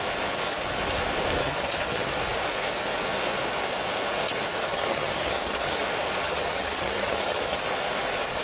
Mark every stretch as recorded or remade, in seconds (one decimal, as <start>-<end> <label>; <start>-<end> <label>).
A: 0.0-1.4 recorded; 1.4-2.1 remade; 2.1-4.7 recorded; 4.7-5.8 remade; 5.8-6.2 recorded; 6.2-7.6 remade; 7.6-8.4 recorded